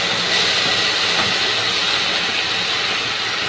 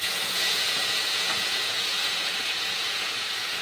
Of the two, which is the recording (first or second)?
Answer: first